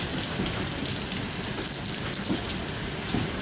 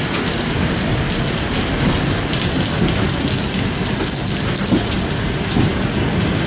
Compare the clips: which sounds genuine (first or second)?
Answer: second